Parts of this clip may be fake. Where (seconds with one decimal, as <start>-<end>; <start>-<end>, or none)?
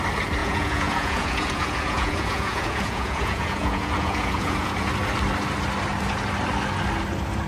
0.4-4.9